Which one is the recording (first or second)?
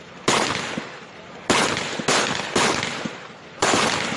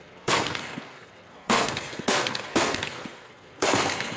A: first